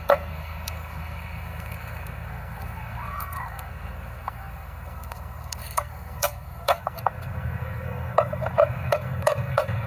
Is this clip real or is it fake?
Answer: fake